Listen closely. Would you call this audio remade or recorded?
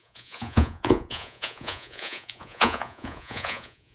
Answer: remade